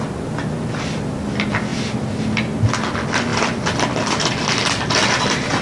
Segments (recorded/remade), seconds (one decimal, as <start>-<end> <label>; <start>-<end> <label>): 0.0-5.6 recorded